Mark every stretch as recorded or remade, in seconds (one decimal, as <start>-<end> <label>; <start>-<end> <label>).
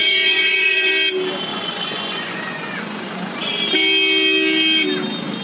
0.0-0.9 remade; 0.9-1.5 recorded; 1.5-3.5 remade; 3.5-5.4 recorded